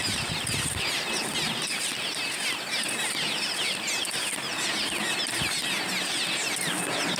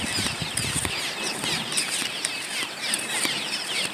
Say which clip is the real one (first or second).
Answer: first